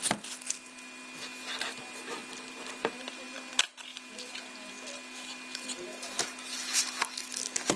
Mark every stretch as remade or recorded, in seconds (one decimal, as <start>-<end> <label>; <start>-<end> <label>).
0.0-7.8 recorded